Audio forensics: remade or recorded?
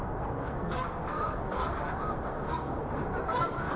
remade